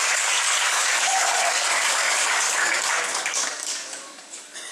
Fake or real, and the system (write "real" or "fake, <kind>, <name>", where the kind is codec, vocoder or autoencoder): fake, codec, DAC